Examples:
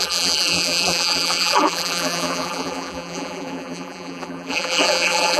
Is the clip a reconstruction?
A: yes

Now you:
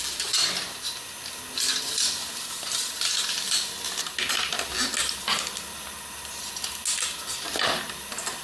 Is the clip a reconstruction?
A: no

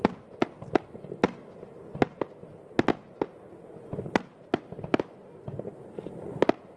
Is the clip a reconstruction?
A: no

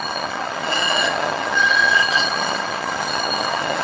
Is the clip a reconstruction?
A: yes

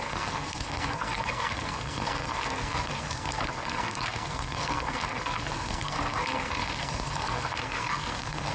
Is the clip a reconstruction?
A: yes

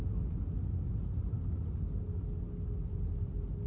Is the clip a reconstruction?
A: no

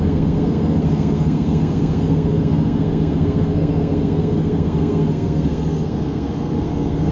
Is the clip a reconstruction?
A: yes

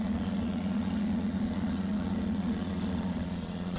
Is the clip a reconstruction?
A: yes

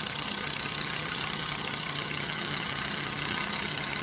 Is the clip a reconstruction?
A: yes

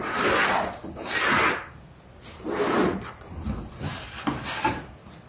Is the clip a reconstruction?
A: no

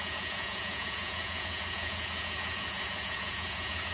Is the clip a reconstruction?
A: yes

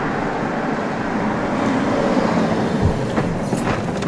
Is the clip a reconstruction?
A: no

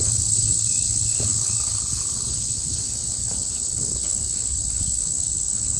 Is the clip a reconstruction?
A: yes